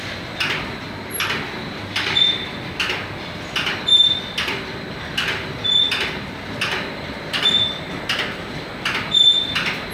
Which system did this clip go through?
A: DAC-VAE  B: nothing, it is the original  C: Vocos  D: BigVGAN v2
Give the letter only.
B